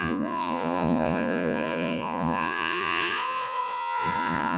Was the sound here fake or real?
fake